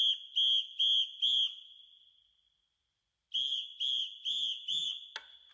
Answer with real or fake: real